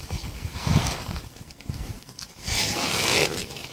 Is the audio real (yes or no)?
no